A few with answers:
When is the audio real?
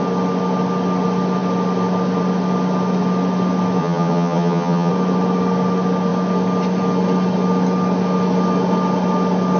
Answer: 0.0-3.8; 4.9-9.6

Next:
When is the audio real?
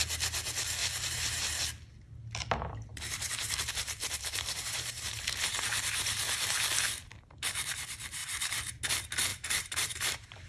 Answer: 0.0-0.8; 1.6-2.9; 6.4-9.3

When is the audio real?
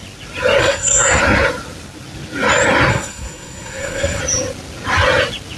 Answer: 0.0-0.6; 1.2-2.9; 4.2-5.6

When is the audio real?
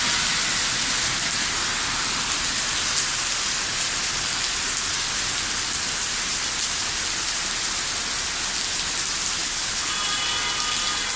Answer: 0.0-9.4; 9.9-11.2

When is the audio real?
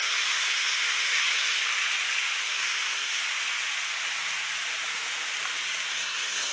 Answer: 1.6-2.4; 3.2-5.9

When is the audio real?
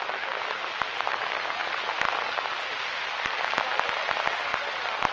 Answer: 0.0-5.1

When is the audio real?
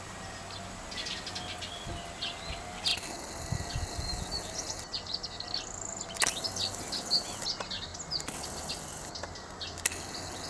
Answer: 0.0-10.5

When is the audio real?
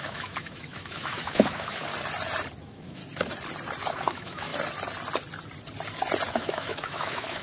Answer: 1.9-2.6; 3.0-3.9; 4.5-6.3